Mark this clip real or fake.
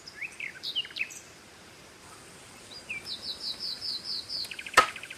fake